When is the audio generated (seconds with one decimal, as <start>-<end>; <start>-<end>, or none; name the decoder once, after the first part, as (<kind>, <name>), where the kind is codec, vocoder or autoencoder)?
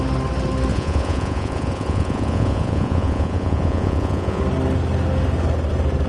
0.7-4.4 (vocoder, Vocos)